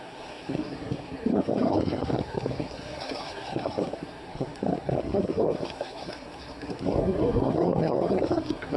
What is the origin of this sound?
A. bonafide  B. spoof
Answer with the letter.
B